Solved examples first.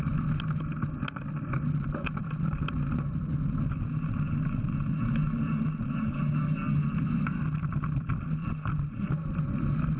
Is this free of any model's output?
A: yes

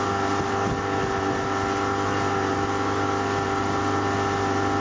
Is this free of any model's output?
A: yes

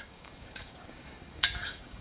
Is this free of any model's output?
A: no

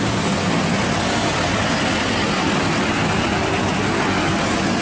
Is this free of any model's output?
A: yes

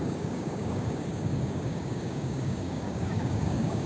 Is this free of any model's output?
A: no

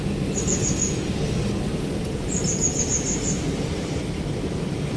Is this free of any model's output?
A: yes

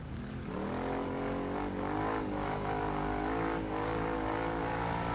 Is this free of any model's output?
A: no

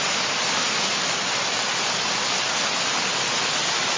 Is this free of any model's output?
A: yes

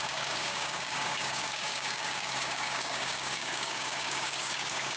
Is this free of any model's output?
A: no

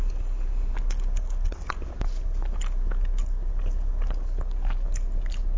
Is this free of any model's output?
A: yes